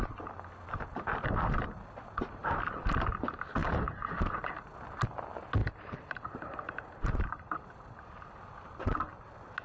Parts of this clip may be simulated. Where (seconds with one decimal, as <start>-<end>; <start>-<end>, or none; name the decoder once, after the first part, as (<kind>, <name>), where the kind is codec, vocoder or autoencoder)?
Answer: 2.4-3.1 (vocoder, BigVGAN v2); 3.6-4.5; 5.6-8.4